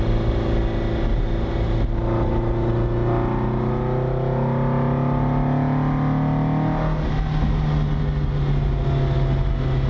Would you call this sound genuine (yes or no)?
yes